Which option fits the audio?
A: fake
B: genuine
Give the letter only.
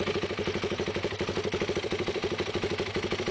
B